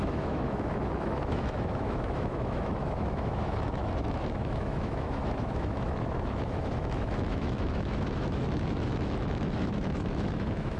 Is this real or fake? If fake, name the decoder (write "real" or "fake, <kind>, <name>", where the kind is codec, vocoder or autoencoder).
fake, autoencoder, DAC-VAE